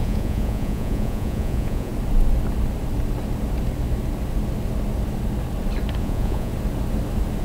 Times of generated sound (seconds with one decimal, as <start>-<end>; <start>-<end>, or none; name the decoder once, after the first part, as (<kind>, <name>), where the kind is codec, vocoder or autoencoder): 0.0-1.9 (vocoder, Vocos); 6.0-6.5